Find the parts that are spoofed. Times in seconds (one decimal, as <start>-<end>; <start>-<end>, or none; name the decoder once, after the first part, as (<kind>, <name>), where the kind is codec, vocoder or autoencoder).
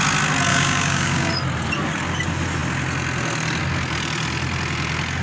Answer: 0.5-1.3 (codec, DAC)